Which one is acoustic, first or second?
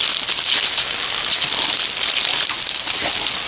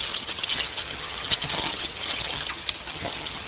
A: first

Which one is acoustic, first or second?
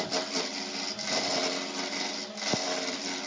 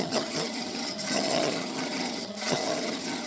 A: first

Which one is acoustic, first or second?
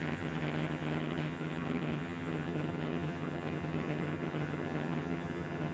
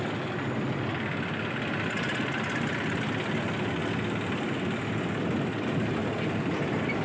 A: second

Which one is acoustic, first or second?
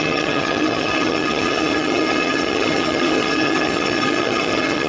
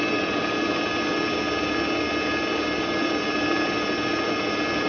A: second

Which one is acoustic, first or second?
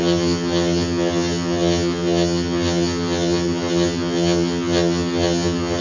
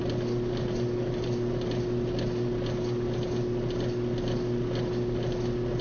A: second